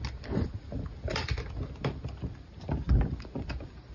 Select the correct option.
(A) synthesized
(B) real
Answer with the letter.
B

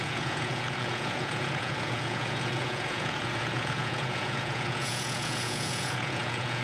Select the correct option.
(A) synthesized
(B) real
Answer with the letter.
A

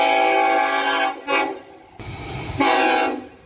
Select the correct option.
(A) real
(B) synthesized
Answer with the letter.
A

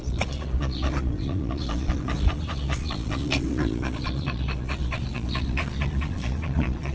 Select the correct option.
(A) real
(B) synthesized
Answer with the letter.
B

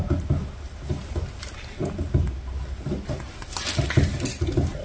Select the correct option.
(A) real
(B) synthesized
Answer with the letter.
A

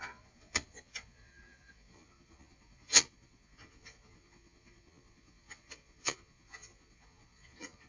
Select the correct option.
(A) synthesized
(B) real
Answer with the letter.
A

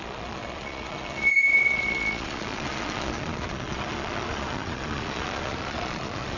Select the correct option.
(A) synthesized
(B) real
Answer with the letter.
A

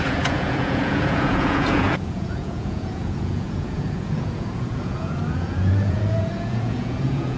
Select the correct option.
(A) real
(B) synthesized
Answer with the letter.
B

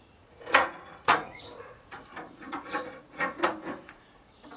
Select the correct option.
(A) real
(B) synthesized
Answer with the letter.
B